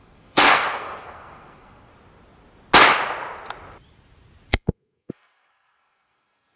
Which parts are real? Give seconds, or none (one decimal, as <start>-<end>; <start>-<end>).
1.9-4.5